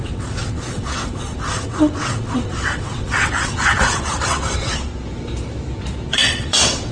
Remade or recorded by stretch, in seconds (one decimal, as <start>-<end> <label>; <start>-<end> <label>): 0.0-4.9 remade; 4.9-6.1 recorded; 6.1-6.9 remade